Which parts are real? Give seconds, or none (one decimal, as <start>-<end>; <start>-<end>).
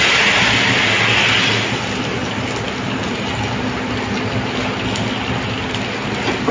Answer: 0.0-6.5